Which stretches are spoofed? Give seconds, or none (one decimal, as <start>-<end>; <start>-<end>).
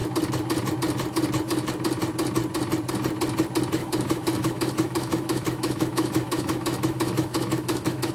3.8-8.1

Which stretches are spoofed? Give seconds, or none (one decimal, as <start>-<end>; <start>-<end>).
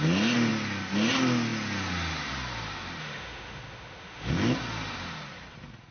3.0-4.3